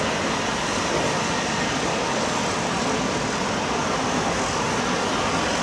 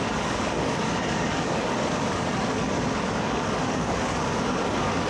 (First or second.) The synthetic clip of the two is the second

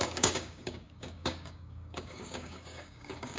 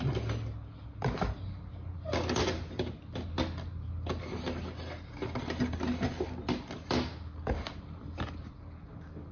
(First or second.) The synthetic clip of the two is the first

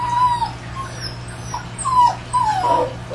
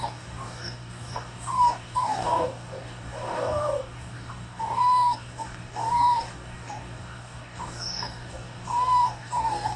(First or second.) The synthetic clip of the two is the second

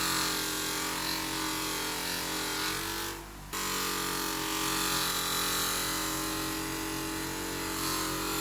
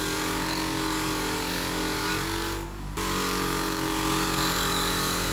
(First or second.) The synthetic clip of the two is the second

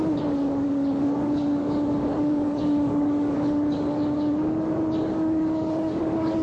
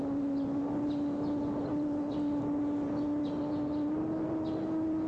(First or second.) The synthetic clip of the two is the first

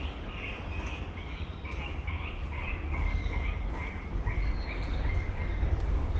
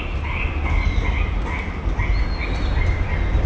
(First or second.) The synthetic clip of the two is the first